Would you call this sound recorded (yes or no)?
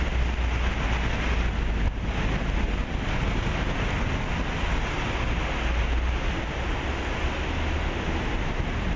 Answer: yes